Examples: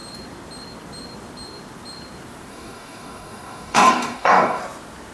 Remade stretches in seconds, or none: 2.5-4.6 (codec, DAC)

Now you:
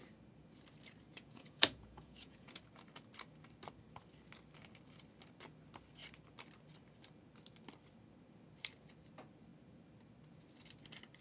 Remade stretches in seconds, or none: 1.1-2.6 (vocoder, Vocos)

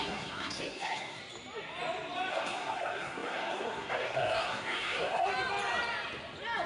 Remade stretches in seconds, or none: 0.0-1.2 (codec, SNAC); 2.3-5.3

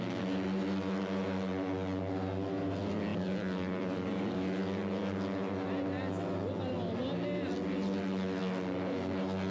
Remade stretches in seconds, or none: none

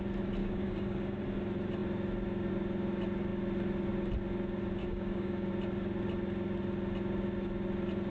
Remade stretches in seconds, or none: 0.4-1.2 (codec, DAC); 4.8-5.5

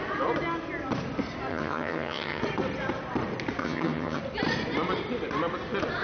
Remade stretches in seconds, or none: 1.5-2.4 (vocoder, HiFi-GAN); 3.6-4.2